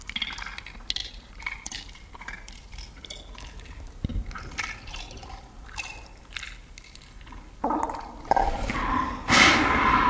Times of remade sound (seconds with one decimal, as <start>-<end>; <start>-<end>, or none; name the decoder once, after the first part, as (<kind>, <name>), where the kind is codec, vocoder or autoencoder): 1.0-2.7 (vocoder, BigVGAN v2)